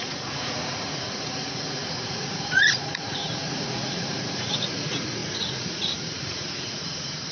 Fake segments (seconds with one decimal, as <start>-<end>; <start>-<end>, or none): 0.0-7.3